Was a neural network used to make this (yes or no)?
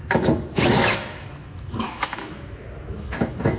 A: yes